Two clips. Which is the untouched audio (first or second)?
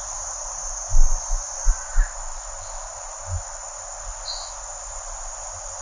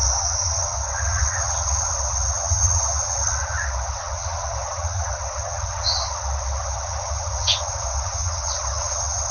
first